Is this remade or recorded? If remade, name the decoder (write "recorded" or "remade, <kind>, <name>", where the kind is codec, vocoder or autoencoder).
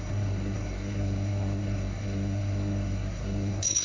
remade, codec, SNAC